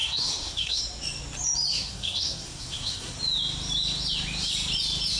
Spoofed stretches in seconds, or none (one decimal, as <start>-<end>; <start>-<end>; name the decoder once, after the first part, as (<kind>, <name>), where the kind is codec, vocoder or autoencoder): 0.0-0.8 (codec, SNAC); 1.7-3.1